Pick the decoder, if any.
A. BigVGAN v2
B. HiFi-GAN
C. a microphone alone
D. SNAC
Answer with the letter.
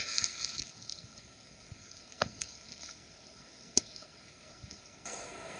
D